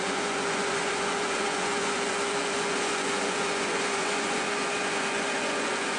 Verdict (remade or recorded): remade